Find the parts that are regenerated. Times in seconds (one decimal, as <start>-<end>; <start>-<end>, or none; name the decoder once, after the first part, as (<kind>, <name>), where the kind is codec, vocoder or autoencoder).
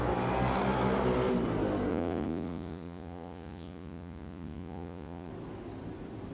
1.9-5.3 (vocoder, Vocos)